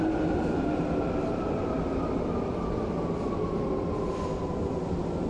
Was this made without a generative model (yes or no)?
yes